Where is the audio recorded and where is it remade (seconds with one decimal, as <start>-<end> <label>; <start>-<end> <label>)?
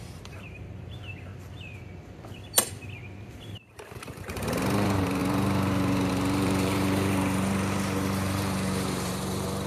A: 0.0-1.3 remade; 1.3-3.4 recorded; 3.4-9.7 remade